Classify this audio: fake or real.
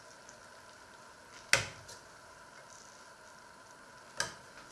real